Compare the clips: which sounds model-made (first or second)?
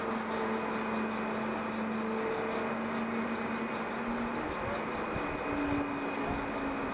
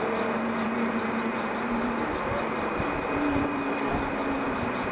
second